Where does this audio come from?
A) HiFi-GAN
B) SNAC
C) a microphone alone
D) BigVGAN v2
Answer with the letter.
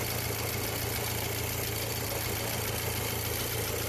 C